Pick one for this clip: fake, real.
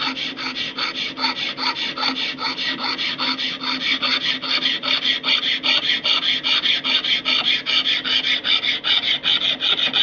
real